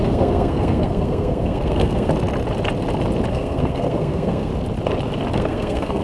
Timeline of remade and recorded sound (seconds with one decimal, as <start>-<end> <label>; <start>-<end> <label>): 0.0-2.1 remade; 2.1-3.3 recorded; 3.3-4.5 remade; 4.5-5.3 recorded; 5.3-6.0 remade